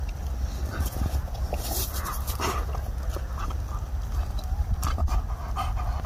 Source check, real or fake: real